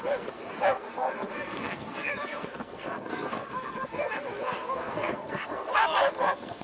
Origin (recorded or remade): remade